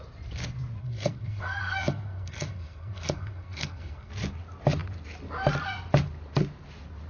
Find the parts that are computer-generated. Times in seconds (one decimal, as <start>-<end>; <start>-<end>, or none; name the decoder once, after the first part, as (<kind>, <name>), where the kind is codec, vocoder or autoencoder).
0.8-4.1 (codec, SNAC)